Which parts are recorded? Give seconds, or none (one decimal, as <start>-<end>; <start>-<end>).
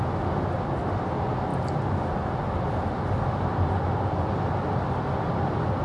0.0-5.8